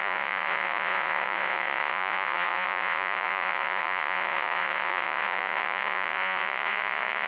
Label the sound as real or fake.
fake